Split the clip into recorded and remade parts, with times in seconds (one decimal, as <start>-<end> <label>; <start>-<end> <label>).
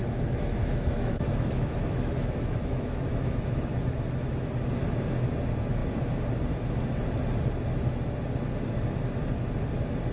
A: 0.0-4.5 remade; 4.5-10.1 recorded